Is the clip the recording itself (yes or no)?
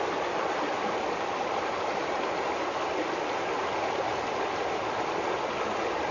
yes